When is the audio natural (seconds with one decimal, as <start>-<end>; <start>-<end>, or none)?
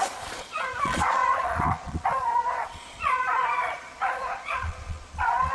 none